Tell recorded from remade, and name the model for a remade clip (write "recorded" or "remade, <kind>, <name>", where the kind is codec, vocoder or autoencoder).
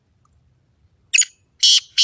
recorded